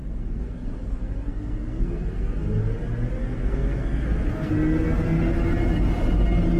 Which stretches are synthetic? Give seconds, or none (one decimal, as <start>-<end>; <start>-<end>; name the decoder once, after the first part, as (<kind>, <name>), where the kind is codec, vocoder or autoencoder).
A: 0.0-2.6 (codec, SNAC); 3.2-4.5